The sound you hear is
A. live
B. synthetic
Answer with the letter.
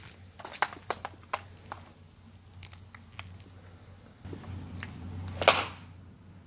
A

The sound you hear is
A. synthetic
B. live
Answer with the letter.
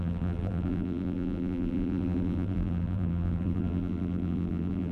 A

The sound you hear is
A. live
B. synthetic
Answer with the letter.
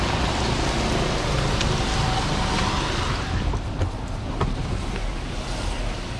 A